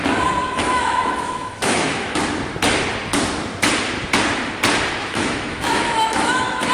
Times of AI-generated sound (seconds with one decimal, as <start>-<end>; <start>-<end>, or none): 0.4-2.2; 5.0-6.7